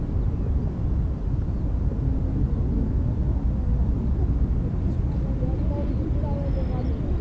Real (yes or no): yes